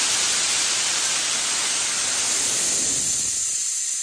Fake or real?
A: real